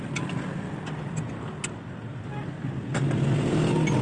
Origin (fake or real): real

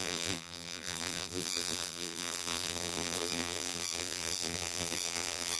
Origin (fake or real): fake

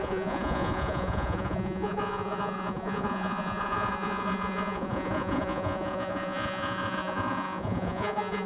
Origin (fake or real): fake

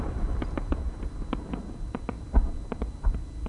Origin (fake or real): real